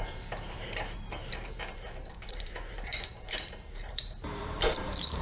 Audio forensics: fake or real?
fake